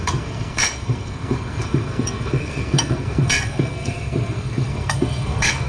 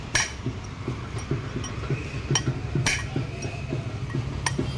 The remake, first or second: first